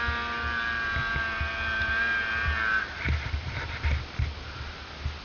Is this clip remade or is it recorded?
recorded